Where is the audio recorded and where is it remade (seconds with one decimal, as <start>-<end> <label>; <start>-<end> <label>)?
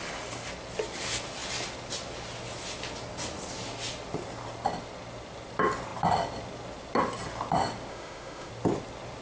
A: 0.0-7.9 recorded; 7.9-8.5 remade; 8.5-9.2 recorded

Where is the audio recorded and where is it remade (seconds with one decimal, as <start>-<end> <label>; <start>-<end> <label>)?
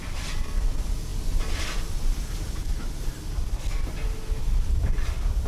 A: 0.0-5.5 recorded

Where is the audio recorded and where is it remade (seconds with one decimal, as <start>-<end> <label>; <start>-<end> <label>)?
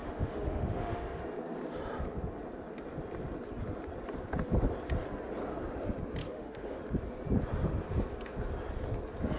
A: 0.0-1.2 remade; 1.2-6.2 recorded; 6.2-6.8 remade; 6.8-9.4 recorded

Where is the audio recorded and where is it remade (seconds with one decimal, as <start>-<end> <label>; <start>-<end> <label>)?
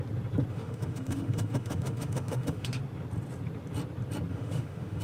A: 0.0-0.5 recorded; 0.5-2.8 remade; 2.8-4.3 recorded; 4.3-5.0 remade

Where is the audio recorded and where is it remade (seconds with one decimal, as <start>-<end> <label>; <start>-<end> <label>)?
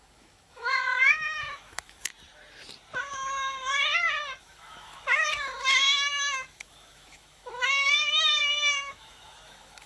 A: 0.0-2.1 remade; 2.1-4.4 recorded; 4.4-9.9 remade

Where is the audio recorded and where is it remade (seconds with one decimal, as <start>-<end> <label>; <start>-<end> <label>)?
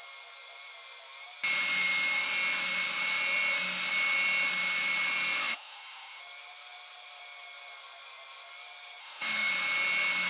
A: 0.0-5.4 recorded; 5.4-6.2 remade; 6.2-9.0 recorded; 9.0-9.5 remade; 9.5-10.3 recorded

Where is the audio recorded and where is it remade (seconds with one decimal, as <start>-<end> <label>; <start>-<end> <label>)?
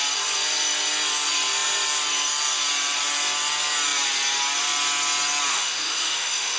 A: 0.0-5.5 recorded; 5.5-6.6 remade